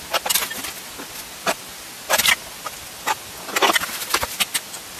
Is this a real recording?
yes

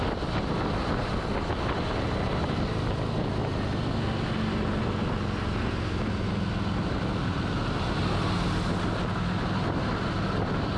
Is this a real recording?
yes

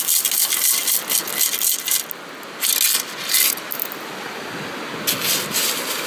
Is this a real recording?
yes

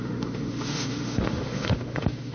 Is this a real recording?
no